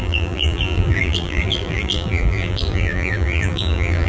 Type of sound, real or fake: fake